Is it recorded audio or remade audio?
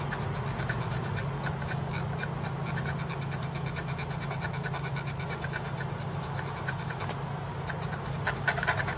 recorded